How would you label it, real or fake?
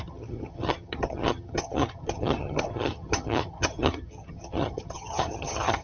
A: fake